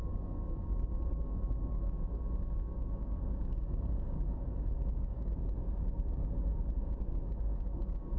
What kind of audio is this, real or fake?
fake